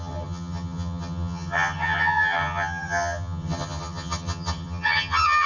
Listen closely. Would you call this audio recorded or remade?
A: remade